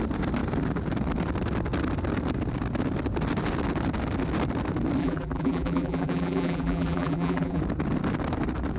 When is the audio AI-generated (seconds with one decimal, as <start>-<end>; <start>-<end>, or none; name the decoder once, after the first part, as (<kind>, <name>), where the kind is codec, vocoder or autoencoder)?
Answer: 5.0-7.6 (vocoder, BigVGAN v2)